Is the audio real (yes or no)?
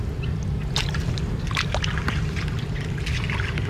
yes